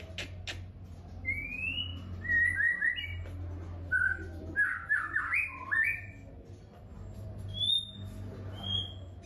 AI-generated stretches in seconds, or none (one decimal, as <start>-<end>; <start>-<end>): 6.9-7.6